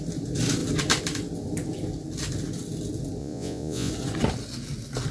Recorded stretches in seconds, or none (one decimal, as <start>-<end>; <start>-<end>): 0.0-3.2; 3.9-5.1